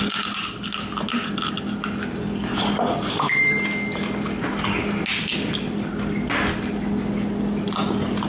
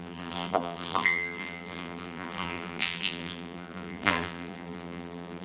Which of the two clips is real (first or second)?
first